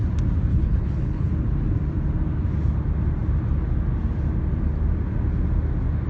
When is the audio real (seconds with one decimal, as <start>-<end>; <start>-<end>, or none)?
0.0-0.5; 1.3-6.1